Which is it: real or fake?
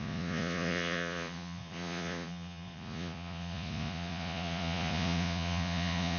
fake